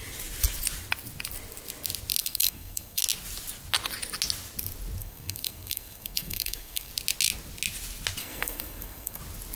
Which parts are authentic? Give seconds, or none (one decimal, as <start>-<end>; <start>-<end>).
0.0-2.2; 3.0-5.0; 6.9-8.2; 9.2-9.6